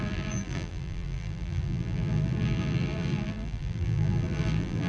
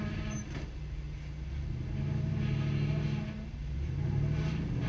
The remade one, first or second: first